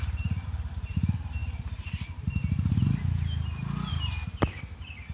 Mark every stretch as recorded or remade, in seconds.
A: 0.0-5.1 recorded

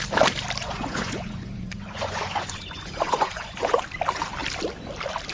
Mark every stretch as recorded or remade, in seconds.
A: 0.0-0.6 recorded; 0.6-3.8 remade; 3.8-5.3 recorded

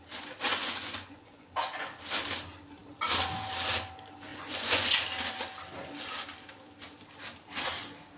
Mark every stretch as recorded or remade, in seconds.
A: 0.0-0.5 recorded; 0.5-1.5 remade; 1.5-4.3 recorded; 4.3-5.0 remade; 5.0-8.2 recorded

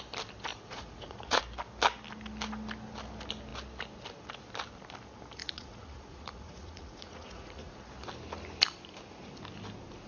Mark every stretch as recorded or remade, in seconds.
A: 0.0-0.5 recorded; 0.5-1.4 remade; 1.4-5.4 recorded; 5.4-7.8 remade; 7.8-10.1 recorded

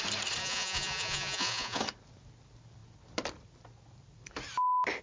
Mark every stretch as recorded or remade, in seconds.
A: 0.0-0.4 recorded; 0.4-1.8 remade; 1.8-5.0 recorded